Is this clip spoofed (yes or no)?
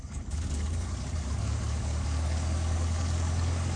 yes